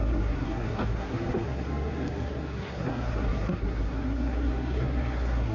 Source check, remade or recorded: remade